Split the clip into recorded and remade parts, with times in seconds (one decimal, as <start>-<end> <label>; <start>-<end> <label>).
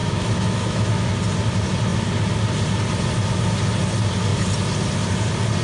0.0-1.1 remade; 1.1-5.6 recorded